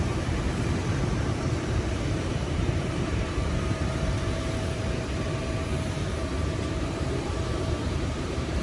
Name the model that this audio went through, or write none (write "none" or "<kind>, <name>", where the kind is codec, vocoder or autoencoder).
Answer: vocoder, BigVGAN v2